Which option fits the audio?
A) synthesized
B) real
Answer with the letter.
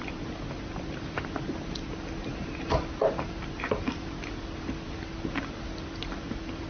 B